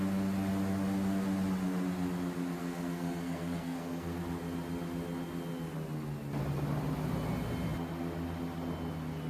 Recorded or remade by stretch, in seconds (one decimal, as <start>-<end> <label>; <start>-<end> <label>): 0.0-2.6 recorded; 2.6-4.2 remade; 4.2-9.3 recorded